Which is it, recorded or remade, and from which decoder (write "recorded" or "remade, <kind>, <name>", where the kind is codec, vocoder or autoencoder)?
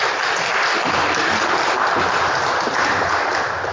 recorded